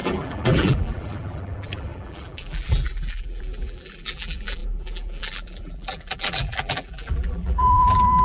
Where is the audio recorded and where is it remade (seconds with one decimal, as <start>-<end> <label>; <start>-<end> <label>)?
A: 0.0-8.2 remade